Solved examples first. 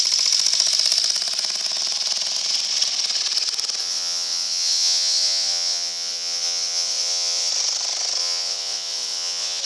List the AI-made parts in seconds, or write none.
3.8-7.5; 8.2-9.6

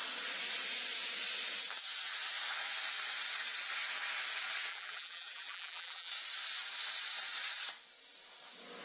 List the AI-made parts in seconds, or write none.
4.7-6.1

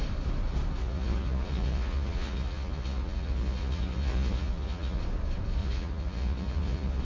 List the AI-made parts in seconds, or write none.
0.8-5.0; 5.6-7.0

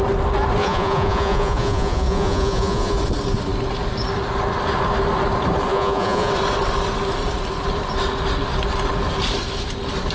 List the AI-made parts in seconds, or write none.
0.6-3.0; 5.7-6.3

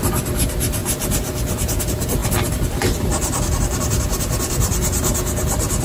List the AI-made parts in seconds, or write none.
0.8-1.8; 2.2-5.8

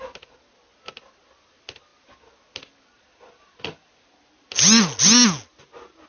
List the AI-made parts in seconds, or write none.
none

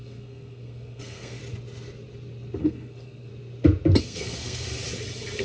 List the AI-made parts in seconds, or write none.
0.0-1.4; 2.6-3.3; 4.0-4.6